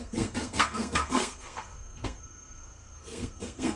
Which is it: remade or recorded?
remade